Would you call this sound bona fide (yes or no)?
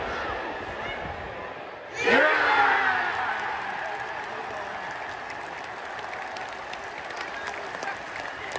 yes